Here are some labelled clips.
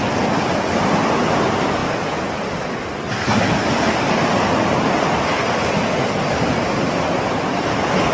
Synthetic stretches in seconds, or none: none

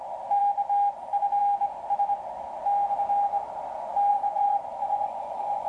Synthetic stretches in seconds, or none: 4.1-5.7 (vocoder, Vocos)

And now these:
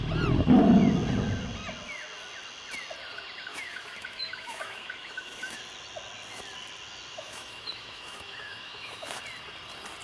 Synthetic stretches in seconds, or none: 3.5-5.6 (autoencoder, DAC-VAE); 7.1-9.2